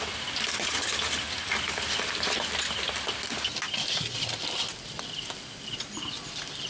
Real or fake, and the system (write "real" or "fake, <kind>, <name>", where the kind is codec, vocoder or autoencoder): real